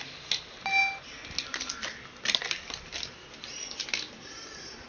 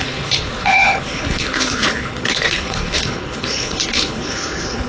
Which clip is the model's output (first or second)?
second